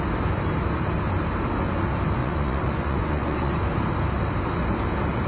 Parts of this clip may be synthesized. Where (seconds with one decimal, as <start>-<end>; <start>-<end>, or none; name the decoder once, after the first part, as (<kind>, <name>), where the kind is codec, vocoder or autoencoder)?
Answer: 2.2-3.5 (vocoder, Vocos)